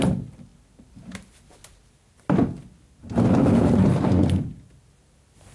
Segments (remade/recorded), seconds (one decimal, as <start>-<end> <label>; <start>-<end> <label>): 0.0-5.5 recorded